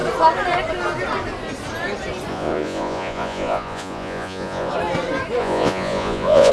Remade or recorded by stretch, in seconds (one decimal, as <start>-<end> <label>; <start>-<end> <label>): 0.0-2.3 recorded; 2.3-4.7 remade; 4.7-5.4 recorded; 5.4-6.5 remade